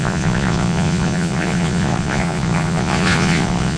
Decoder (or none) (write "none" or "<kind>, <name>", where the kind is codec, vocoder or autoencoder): vocoder, Vocos